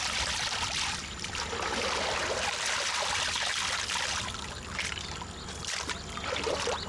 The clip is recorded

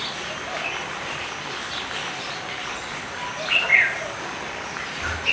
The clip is recorded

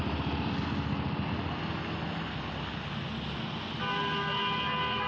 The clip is recorded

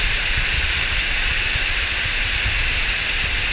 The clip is recorded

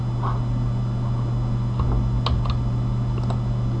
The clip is recorded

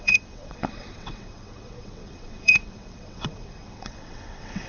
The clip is remade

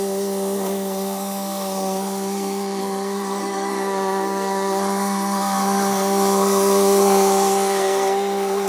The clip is remade